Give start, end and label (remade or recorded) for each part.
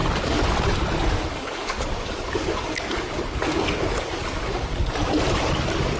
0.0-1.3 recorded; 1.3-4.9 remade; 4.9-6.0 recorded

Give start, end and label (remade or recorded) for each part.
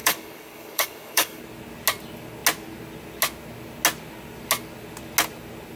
0.0-1.4 remade; 1.4-5.8 recorded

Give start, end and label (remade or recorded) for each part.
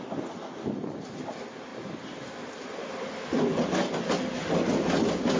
0.0-5.4 recorded